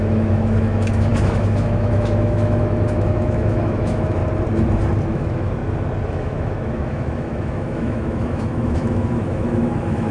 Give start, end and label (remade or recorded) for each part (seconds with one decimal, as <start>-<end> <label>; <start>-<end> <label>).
0.0-4.2 remade; 4.2-5.1 recorded; 5.1-5.6 remade; 5.6-6.1 recorded; 6.1-10.1 remade